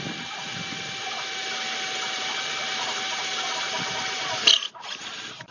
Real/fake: real